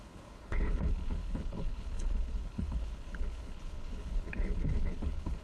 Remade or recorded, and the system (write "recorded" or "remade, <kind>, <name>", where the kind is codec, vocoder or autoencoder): remade, codec, HILCodec